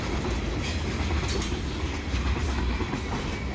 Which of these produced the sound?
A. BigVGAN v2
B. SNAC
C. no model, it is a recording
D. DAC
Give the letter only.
C